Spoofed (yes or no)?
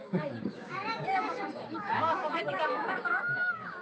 yes